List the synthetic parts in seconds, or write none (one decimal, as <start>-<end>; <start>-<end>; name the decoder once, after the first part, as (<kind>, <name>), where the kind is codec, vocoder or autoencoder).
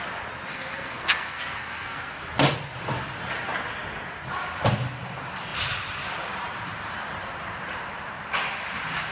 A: 0.5-2.2 (codec, SNAC)